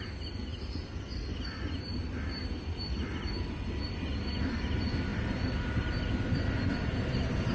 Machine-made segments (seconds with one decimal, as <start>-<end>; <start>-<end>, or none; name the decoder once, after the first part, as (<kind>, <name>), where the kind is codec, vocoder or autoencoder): none